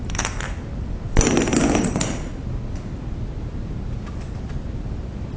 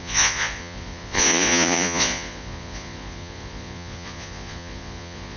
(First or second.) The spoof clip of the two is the second